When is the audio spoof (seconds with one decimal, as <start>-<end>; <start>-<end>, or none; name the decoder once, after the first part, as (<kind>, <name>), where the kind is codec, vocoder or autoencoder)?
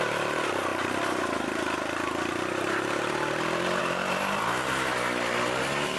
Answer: none